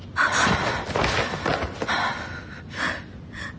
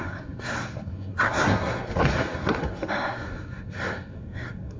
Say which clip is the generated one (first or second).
second